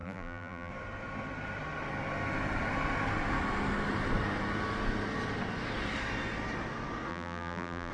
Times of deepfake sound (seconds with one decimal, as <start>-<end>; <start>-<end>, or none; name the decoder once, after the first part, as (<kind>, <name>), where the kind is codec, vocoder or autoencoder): 0.0-0.7 (vocoder, BigVGAN v2); 7.1-7.9